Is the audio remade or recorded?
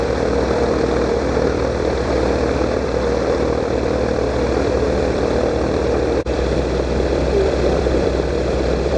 remade